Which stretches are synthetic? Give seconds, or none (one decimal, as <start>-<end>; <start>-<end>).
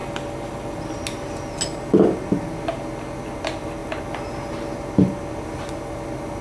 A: none